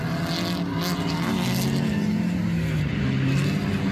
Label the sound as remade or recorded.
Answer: recorded